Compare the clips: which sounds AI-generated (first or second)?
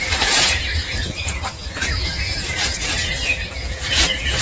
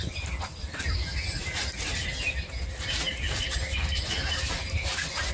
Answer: first